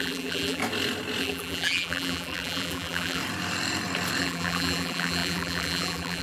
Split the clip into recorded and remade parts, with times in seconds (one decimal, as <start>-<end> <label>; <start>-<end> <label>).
0.0-0.6 remade; 0.6-1.2 recorded; 1.2-3.2 remade; 3.2-4.2 recorded; 4.2-6.2 remade